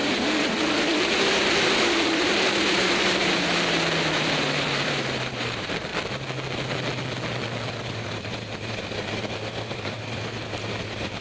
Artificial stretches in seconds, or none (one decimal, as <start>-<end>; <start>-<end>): 0.0-5.9; 7.8-11.2